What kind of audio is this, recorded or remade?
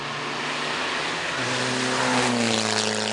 recorded